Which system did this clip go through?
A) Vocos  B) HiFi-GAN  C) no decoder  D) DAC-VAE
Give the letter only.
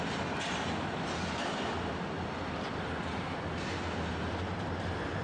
C